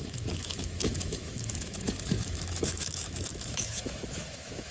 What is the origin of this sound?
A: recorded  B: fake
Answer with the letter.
B